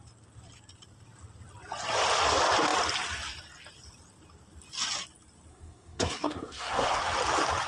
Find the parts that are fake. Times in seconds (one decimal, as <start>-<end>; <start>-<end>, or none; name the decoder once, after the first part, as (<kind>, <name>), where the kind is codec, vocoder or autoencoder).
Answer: 5.5-7.0 (codec, SNAC)